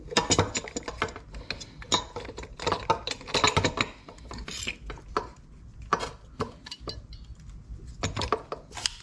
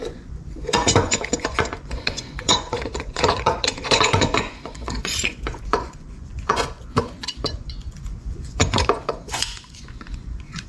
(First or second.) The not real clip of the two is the second